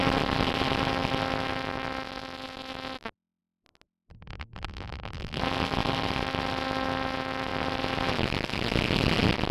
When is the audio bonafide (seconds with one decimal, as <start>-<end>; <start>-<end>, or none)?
0.0-4.1; 5.4-9.5